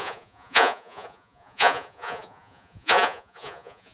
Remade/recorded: remade